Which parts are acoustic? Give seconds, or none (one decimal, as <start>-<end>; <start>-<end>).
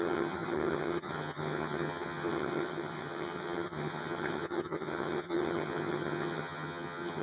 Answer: none